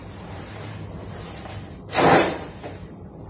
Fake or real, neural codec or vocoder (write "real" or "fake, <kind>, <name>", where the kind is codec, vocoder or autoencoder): fake, vocoder, BigVGAN v2